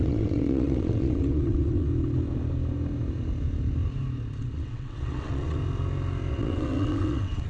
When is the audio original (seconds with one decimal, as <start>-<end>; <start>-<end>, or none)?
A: 1.9-4.4; 5.6-6.3